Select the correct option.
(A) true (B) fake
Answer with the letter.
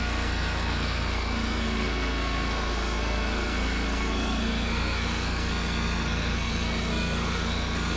B